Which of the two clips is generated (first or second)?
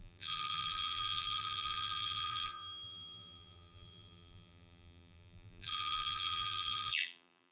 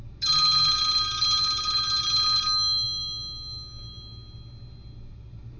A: first